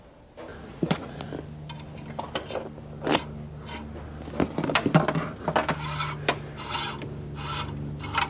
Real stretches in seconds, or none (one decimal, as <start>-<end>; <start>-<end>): 0.0-0.5; 1.3-8.3